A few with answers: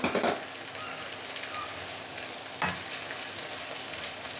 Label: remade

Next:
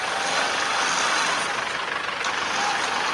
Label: recorded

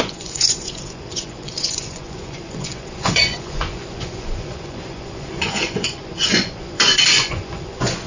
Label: remade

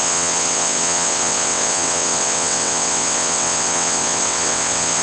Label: remade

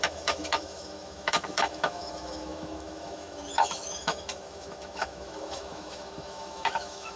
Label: remade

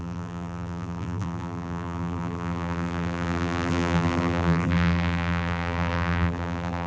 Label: remade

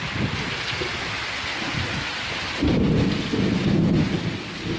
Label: recorded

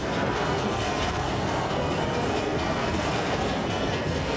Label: remade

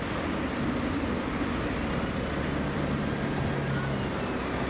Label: recorded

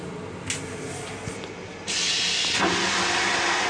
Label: recorded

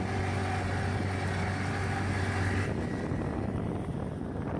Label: recorded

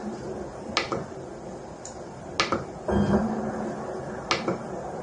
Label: recorded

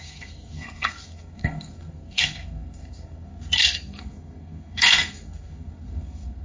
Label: remade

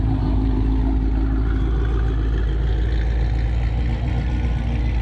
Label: recorded